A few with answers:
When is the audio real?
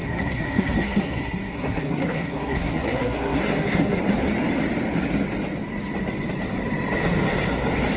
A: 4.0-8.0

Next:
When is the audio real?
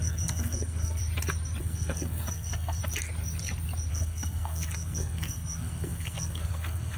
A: 1.0-1.6; 2.8-3.9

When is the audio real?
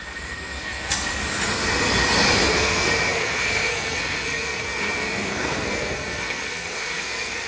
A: 1.1-2.5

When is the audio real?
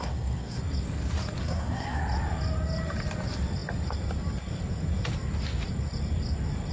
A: 0.6-1.4; 2.0-6.7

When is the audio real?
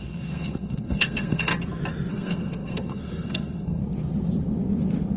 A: 1.5-2.1; 3.8-5.2